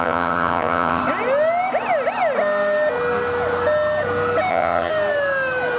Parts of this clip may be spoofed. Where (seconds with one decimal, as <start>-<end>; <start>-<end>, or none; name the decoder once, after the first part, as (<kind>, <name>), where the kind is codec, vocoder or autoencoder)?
0.0-1.0 (vocoder, HiFi-GAN); 4.5-4.9

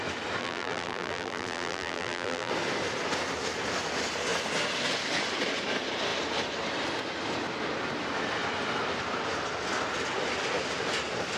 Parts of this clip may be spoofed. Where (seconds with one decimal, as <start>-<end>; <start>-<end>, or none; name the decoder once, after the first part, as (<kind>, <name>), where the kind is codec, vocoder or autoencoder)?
0.4-2.5 (vocoder, BigVGAN v2)

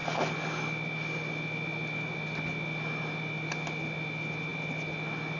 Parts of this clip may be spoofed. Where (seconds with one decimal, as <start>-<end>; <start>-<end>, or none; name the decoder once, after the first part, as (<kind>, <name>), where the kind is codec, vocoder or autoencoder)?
none

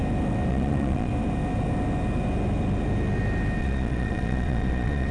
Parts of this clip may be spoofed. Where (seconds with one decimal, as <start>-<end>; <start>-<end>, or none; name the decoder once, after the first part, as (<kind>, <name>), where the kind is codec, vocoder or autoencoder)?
0.5-1.1 (vocoder, Vocos); 3.6-5.1

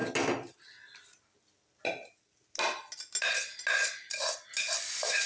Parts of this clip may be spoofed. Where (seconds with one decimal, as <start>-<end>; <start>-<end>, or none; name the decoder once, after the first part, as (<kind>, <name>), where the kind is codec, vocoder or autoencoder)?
none

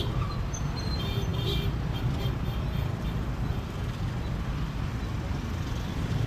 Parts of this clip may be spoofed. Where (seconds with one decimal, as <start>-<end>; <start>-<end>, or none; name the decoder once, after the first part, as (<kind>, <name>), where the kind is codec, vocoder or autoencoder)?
0.0-6.3 (vocoder, BigVGAN v2)

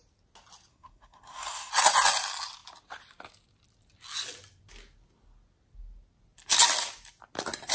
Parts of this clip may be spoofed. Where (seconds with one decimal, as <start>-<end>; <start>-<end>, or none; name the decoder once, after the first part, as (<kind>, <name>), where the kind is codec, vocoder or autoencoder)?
0.7-1.7 (codec, SNAC)